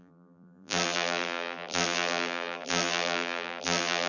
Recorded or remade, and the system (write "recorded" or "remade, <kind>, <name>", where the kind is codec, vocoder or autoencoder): remade, vocoder, BigVGAN v2